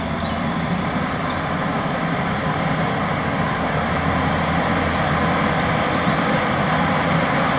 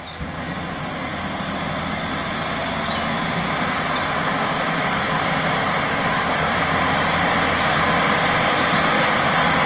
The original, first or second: second